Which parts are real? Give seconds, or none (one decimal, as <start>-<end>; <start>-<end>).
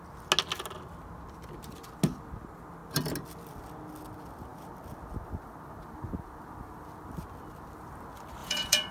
0.0-8.4